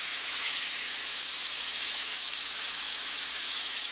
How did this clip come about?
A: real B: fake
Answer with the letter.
B